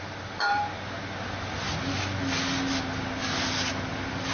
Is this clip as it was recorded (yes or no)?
yes